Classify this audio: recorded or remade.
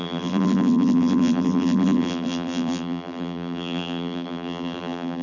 remade